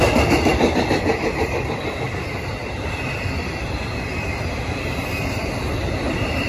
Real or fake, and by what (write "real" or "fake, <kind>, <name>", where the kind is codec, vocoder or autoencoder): fake, vocoder, BigVGAN v2